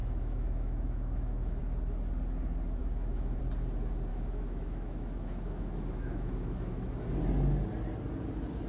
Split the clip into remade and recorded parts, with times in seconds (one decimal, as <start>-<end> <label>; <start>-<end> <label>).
0.0-1.6 remade; 1.6-2.8 recorded; 2.8-3.4 remade; 3.4-4.1 recorded; 4.1-7.0 remade; 7.0-8.7 recorded